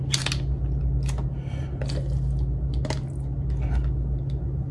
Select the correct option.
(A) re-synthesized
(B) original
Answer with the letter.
B